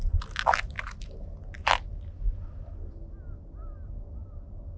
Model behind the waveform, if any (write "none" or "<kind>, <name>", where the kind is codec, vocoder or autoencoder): none